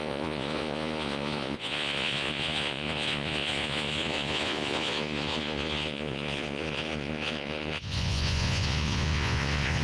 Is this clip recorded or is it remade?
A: remade